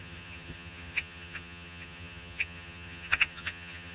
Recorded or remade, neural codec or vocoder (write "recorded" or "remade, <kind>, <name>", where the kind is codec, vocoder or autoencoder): remade, vocoder, HiFi-GAN